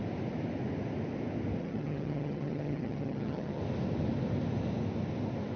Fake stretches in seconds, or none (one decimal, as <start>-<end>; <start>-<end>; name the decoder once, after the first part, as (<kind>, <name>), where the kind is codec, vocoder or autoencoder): 1.6-3.6 (vocoder, HiFi-GAN)

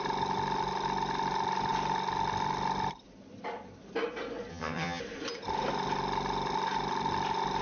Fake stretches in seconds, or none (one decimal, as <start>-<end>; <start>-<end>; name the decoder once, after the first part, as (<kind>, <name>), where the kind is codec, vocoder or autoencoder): 4.5-5.0 (vocoder, HiFi-GAN)

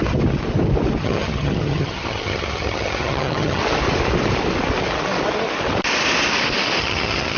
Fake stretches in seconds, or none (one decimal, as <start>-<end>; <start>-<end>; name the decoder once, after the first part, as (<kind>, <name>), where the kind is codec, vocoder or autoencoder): 1.0-3.6 (vocoder, HiFi-GAN); 6.8-7.4

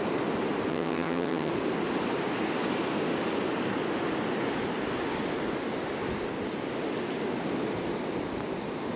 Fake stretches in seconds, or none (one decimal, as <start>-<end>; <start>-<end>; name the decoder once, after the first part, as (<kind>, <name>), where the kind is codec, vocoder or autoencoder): 0.7-1.5 (vocoder, HiFi-GAN)

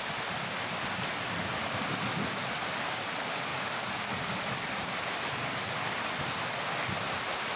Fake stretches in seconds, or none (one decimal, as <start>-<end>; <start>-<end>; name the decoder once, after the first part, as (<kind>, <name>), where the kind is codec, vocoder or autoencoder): none